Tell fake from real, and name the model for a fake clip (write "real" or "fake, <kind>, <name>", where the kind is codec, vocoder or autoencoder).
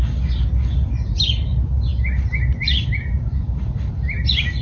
real